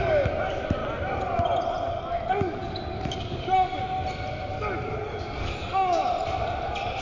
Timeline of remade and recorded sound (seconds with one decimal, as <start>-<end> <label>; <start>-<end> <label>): 0.0-0.8 remade; 0.8-1.9 recorded; 1.9-3.8 remade; 3.8-4.5 recorded; 4.5-6.0 remade; 6.0-7.0 recorded

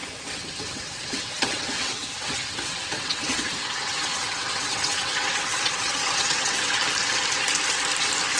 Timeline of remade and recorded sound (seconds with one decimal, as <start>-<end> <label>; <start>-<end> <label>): 0.0-6.8 remade; 6.8-8.4 recorded